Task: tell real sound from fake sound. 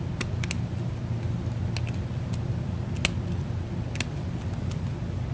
real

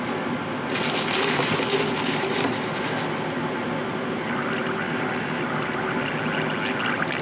real